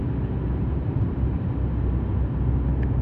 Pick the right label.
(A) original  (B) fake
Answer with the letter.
A